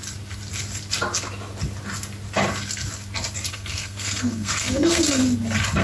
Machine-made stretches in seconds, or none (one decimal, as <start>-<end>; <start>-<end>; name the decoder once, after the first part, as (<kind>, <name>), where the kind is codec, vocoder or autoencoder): 3.5-5.2 (codec, SNAC)